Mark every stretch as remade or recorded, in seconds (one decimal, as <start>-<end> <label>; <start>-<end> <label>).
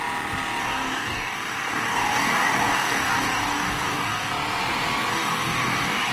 0.0-0.6 recorded; 0.6-4.3 remade; 4.3-5.1 recorded; 5.1-6.1 remade